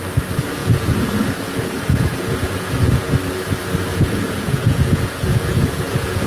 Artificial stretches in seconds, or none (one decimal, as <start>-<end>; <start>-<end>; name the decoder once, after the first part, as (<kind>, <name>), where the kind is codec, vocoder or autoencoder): 0.6-3.0 (vocoder, Vocos); 3.9-6.3